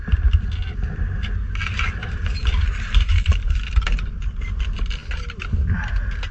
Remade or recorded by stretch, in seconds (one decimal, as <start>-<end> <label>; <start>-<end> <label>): 0.0-2.0 recorded; 2.0-4.0 remade; 4.0-6.3 recorded